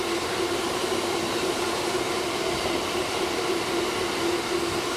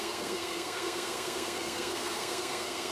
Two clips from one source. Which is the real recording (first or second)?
first